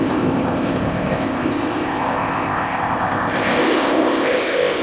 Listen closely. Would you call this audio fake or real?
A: fake